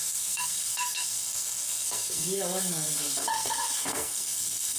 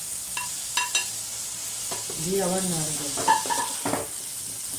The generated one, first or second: first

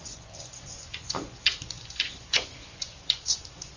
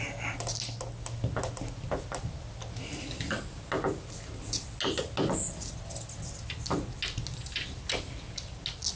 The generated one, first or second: first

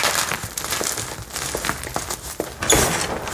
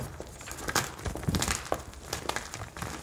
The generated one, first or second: second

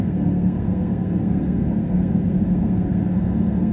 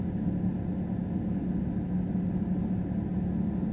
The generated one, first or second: first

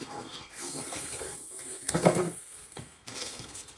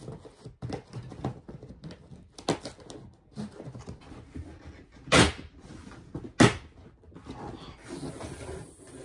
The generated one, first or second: first